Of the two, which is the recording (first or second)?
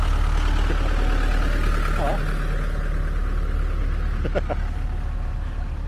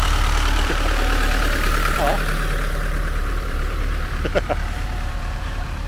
first